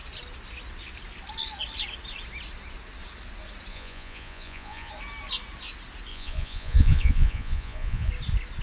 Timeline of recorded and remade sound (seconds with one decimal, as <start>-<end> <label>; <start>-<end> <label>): 0.0-3.7 recorded; 3.7-4.9 remade; 4.9-6.1 recorded; 6.1-8.1 remade; 8.1-8.6 recorded